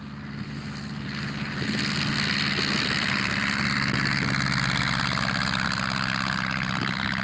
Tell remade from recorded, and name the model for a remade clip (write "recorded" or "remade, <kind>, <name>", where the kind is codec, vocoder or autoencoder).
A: recorded